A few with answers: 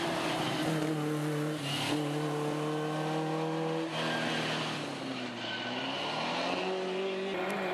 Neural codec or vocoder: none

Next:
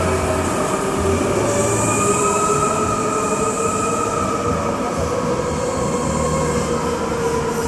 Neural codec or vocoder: none